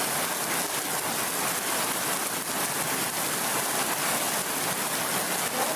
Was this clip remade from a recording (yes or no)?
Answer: no